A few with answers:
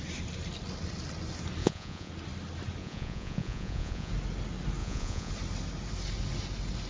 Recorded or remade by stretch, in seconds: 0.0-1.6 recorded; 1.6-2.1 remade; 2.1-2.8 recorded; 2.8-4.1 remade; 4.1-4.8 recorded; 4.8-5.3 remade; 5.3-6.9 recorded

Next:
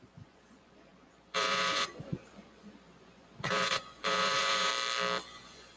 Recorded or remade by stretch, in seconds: 0.0-4.7 remade; 4.7-5.3 recorded; 5.3-5.8 remade

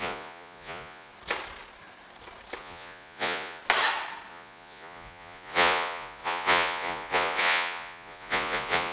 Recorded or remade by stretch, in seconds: 0.0-1.1 remade; 1.1-2.6 recorded; 2.6-3.6 remade; 3.6-4.3 recorded; 4.3-8.9 remade

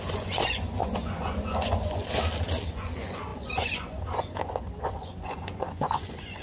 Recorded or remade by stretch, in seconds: 0.0-2.0 remade; 2.0-2.7 recorded; 2.7-6.4 remade